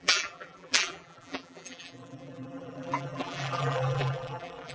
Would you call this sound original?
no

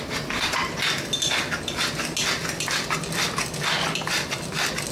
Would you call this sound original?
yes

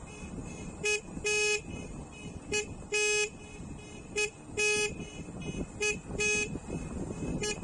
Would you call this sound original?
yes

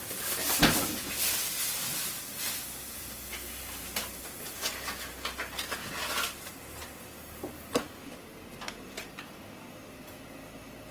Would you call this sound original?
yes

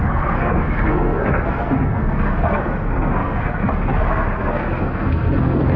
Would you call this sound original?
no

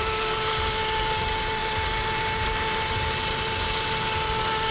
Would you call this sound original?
yes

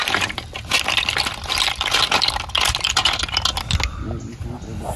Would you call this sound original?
yes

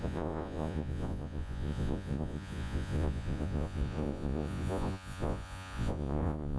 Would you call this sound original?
no